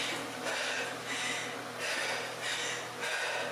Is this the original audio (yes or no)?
yes